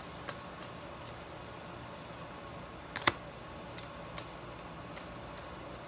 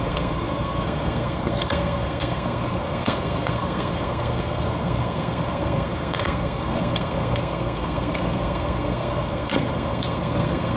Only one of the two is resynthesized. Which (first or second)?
second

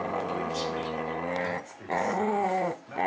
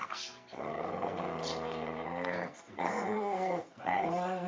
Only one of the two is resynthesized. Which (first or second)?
second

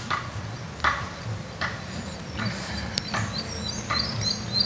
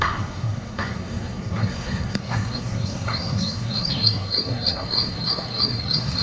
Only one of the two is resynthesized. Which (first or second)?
second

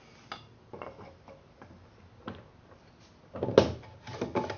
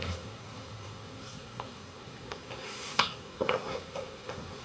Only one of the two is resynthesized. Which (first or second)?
second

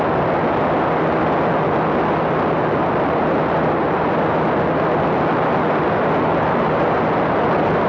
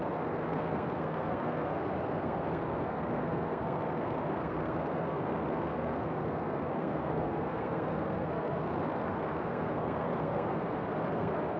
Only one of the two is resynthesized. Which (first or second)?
second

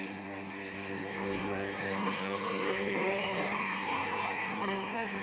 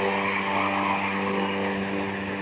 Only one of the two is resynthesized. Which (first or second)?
first